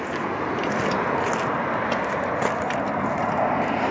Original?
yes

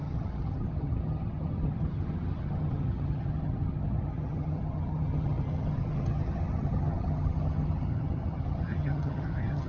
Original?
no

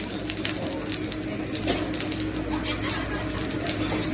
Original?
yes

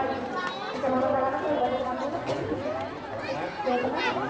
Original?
yes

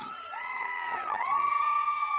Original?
no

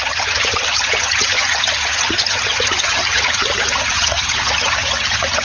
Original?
no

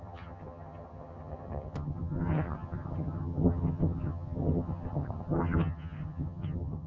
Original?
no